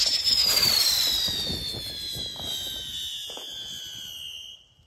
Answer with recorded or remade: recorded